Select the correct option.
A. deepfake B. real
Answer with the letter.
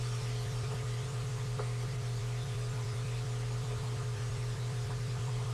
A